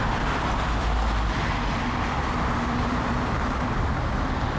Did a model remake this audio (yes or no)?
yes